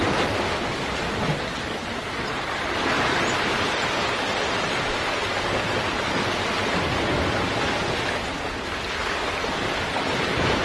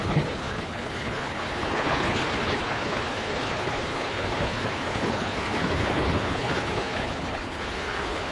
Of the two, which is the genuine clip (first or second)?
first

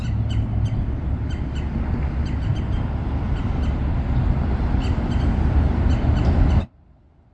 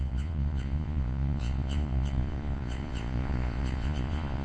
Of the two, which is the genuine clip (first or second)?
first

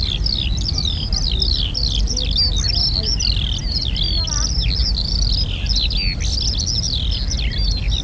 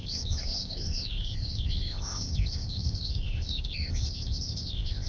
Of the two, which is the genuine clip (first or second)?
first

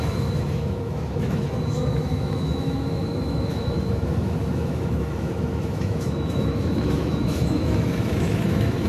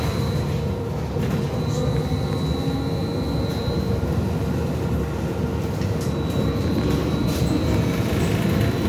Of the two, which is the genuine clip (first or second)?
second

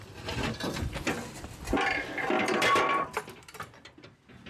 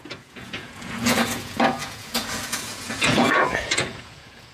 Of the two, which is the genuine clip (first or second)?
first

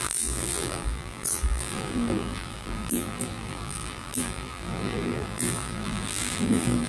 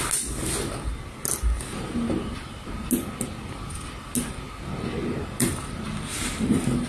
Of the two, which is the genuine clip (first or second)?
second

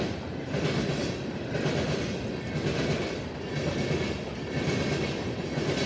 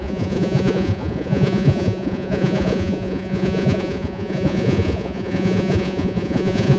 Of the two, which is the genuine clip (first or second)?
first